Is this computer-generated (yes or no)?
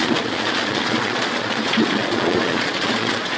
yes